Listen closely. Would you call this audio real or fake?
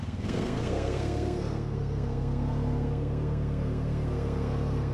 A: fake